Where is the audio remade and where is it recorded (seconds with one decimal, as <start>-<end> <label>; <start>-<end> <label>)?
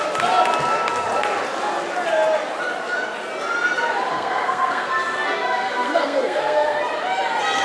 0.0-4.1 recorded; 4.1-6.8 remade; 6.8-7.6 recorded